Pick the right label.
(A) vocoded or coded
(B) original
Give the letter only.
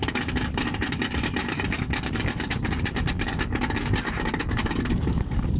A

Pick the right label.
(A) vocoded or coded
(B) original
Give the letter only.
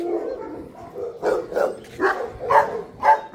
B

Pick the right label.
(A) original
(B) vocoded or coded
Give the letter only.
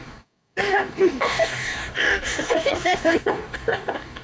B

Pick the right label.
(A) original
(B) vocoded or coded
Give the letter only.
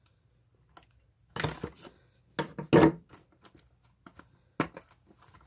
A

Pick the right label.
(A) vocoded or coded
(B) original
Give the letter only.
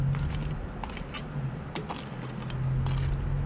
B